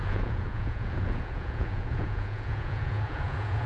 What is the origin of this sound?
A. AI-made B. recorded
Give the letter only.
A